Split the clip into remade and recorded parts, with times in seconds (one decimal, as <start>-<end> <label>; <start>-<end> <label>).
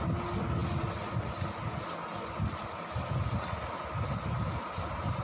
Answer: 0.0-5.2 recorded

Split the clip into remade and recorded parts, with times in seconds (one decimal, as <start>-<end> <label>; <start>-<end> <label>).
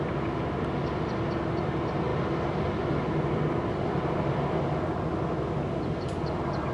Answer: 0.0-6.7 recorded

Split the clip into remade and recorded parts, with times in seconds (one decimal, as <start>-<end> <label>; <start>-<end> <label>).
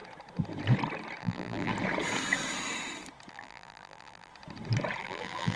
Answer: 0.0-1.2 recorded; 1.2-1.7 remade; 1.7-3.3 recorded; 3.3-4.3 remade; 4.3-5.0 recorded; 5.0-5.6 remade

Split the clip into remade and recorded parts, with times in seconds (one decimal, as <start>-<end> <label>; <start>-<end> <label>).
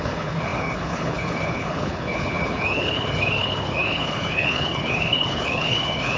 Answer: 0.0-6.2 remade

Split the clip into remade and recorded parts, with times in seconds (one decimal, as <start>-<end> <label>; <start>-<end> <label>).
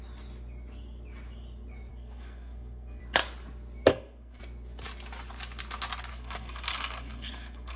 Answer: 0.0-1.9 recorded; 1.9-3.0 remade; 3.0-3.9 recorded; 3.9-4.4 remade; 4.4-6.1 recorded; 6.1-7.8 remade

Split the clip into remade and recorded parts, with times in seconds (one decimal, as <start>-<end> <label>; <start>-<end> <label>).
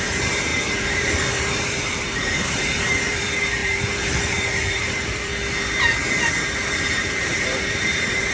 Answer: 0.0-5.3 remade; 5.3-6.9 recorded; 6.9-8.3 remade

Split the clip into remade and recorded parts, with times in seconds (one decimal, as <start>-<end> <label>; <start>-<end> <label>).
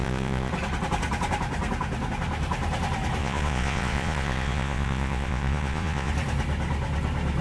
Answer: 0.0-0.5 remade; 0.5-3.2 recorded; 3.2-6.1 remade; 6.1-7.4 recorded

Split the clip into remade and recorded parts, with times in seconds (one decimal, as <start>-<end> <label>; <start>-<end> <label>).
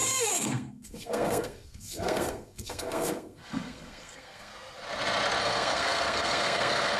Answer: 0.0-4.5 remade; 4.5-5.4 recorded; 5.4-7.0 remade